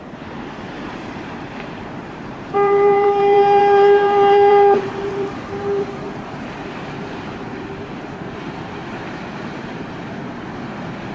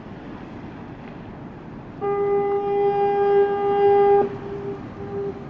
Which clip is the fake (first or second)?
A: first